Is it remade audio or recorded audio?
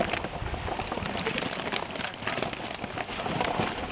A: recorded